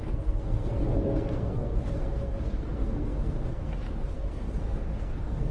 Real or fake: fake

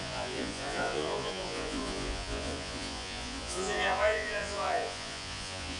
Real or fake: fake